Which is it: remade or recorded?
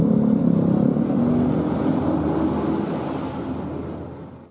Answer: recorded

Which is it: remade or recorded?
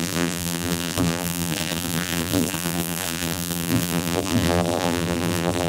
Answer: remade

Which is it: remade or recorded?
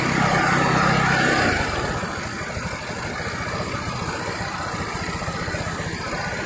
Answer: recorded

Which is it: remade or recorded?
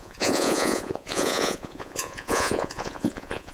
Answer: remade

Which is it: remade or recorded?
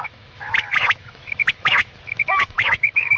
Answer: remade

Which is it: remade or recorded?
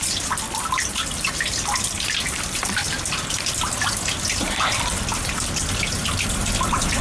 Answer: remade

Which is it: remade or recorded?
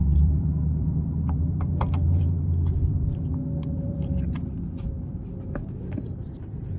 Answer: remade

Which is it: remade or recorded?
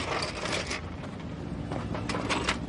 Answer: recorded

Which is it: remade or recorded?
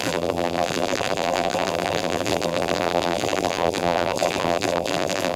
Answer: remade